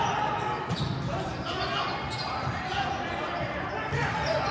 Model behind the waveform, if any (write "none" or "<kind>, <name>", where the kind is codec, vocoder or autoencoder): none